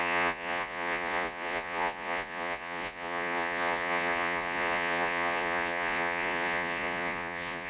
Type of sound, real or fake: fake